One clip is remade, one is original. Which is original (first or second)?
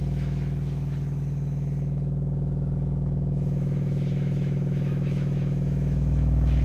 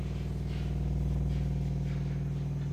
second